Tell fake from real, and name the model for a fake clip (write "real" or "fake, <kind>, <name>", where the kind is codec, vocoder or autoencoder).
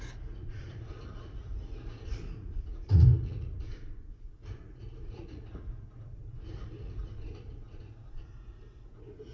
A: fake, vocoder, Vocos